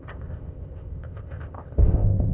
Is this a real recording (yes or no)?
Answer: no